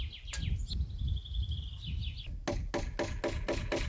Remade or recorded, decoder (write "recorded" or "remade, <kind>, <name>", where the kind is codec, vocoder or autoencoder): recorded